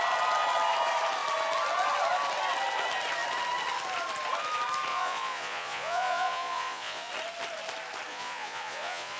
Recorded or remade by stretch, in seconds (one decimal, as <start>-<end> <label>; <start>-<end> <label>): 0.0-4.9 recorded; 4.9-7.1 remade; 7.1-8.1 recorded; 8.1-9.2 remade